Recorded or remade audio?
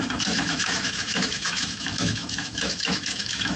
remade